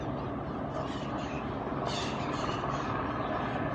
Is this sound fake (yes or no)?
no